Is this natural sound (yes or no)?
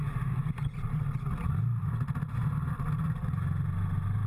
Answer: yes